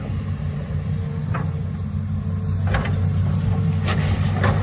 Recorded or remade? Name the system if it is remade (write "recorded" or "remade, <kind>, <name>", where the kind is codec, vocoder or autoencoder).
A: recorded